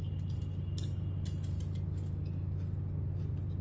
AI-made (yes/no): no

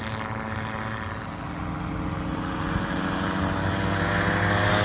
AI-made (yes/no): no